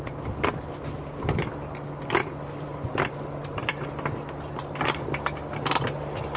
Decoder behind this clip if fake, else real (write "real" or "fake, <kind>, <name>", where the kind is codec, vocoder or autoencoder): real